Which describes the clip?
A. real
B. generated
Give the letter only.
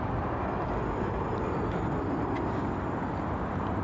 A